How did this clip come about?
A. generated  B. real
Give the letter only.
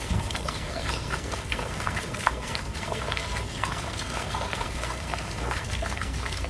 A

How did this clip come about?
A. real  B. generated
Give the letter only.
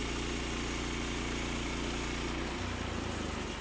A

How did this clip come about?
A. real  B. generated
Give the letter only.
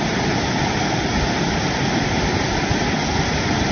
A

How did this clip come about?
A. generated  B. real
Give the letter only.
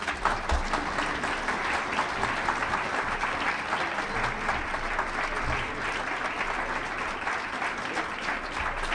B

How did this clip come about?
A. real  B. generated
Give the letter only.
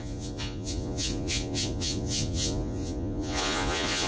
B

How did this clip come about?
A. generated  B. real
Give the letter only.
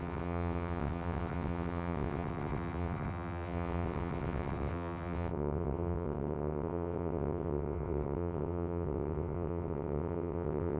A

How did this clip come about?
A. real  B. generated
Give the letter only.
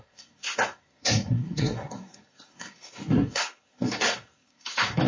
B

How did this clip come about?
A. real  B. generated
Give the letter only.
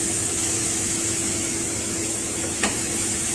B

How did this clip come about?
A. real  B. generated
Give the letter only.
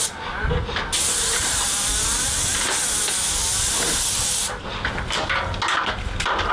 A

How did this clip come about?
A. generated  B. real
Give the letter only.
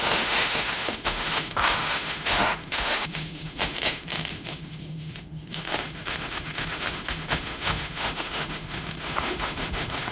A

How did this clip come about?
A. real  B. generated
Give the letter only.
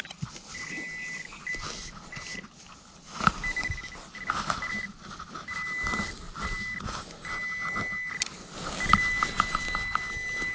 A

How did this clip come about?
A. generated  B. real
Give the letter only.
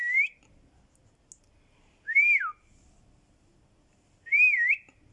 B